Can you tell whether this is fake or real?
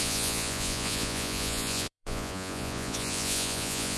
fake